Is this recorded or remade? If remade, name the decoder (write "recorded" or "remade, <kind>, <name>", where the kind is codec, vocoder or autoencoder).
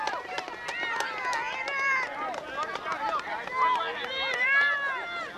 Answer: recorded